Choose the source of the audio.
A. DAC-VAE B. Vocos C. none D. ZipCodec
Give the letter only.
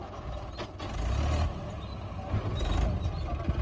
C